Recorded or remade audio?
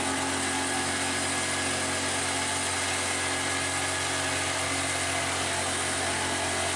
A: recorded